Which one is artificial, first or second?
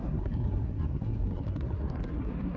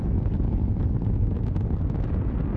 first